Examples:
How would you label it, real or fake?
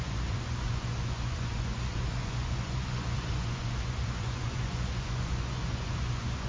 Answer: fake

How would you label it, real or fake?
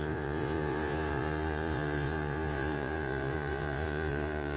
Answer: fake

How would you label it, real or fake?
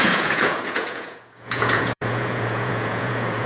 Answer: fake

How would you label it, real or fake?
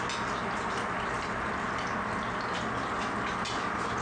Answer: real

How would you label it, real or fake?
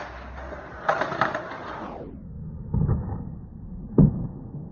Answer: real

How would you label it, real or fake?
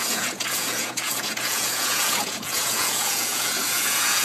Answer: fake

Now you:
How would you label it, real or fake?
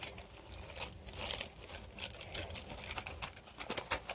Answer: real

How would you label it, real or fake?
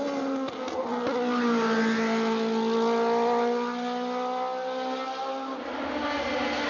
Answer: real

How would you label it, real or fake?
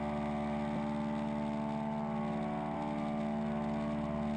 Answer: real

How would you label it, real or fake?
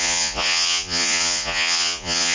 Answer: fake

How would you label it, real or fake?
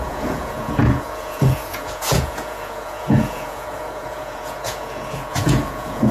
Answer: fake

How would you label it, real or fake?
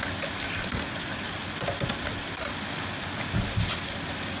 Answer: real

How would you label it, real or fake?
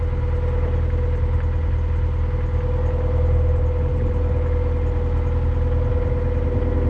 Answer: real